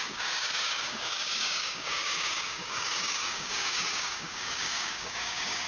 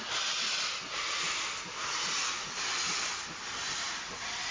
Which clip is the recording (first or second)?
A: second